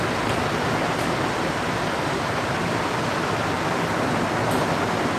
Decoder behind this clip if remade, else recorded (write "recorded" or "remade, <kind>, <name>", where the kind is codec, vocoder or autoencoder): recorded